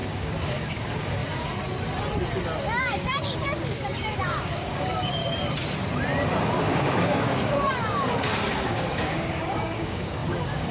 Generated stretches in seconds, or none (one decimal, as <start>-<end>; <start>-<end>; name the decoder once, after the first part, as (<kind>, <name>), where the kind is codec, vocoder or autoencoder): 0.0-1.2 (codec, DAC); 2.8-5.2; 6.4-10.7